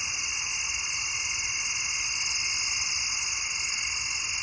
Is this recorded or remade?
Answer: recorded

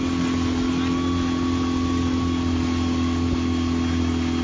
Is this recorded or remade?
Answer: recorded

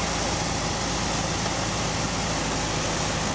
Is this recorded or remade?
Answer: recorded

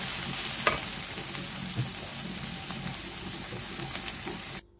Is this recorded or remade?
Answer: recorded